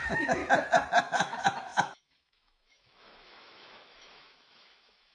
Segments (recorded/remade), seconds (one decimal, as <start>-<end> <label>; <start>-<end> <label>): 0.0-0.4 remade; 0.4-1.0 recorded; 1.0-5.1 remade

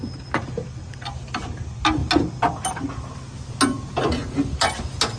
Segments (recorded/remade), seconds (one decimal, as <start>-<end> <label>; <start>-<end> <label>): 0.0-5.2 recorded

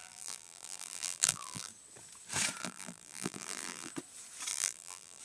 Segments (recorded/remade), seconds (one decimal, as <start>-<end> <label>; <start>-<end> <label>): 0.0-1.7 remade; 1.7-2.6 recorded; 2.6-3.9 remade; 3.9-4.5 recorded; 4.5-5.2 remade